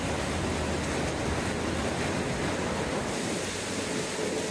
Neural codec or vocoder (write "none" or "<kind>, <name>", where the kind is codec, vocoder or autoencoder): none